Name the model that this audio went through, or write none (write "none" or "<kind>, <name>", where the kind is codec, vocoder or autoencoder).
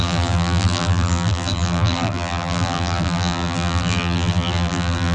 vocoder, BigVGAN v2